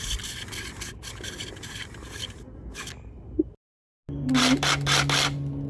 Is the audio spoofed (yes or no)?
no